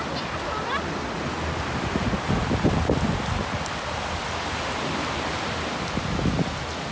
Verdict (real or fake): real